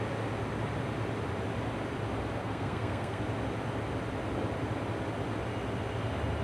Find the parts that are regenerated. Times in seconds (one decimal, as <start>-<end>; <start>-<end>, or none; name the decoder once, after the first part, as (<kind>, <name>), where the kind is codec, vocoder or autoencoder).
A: 2.4-3.2 (codec, SNAC)

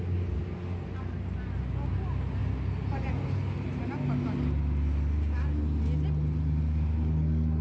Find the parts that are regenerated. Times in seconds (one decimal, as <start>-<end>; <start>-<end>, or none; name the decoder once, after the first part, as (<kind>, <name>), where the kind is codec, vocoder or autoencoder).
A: none

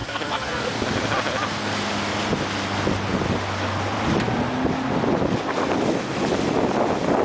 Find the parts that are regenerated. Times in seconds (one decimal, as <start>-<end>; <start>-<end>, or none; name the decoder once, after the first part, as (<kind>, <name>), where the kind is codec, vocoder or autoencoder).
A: 0.0-0.6 (codec, SNAC)

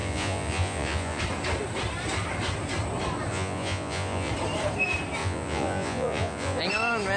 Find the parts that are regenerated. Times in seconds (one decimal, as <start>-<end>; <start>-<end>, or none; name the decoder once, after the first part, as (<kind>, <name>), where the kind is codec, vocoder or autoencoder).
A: 0.0-1.2 (vocoder, Vocos); 3.3-4.3; 5.2-6.6

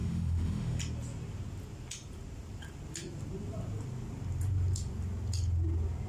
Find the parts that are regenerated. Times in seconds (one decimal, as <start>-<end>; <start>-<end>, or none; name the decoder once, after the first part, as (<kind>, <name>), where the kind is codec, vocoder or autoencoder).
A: 0.0-0.8 (autoencoder, DAC-VAE)

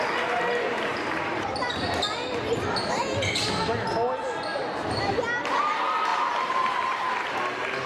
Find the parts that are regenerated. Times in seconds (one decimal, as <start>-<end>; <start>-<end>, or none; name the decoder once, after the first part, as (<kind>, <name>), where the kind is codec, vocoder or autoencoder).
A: 0.9-1.9 (vocoder, BigVGAN v2); 4.5-5.1; 6.1-7.4

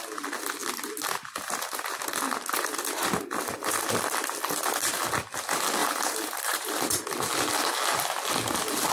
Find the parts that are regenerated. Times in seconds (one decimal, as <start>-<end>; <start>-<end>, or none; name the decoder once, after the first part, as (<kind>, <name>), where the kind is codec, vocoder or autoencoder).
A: 5.8-6.7 (vocoder, BigVGAN v2)